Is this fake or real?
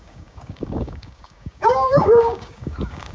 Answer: fake